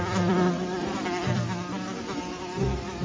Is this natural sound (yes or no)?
no